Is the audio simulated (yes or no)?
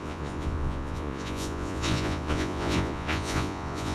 yes